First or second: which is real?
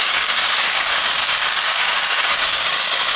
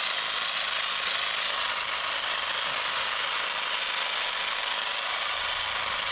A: second